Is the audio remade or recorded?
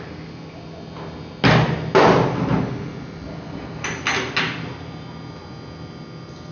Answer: recorded